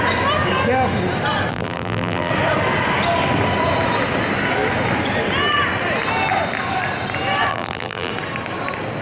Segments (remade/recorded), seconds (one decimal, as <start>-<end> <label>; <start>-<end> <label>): 0.0-1.5 recorded; 1.5-2.3 remade; 2.3-7.5 recorded; 7.5-8.1 remade; 8.1-9.0 recorded